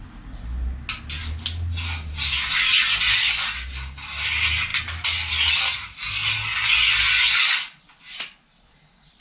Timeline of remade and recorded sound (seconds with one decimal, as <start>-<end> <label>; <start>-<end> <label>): 0.0-9.2 recorded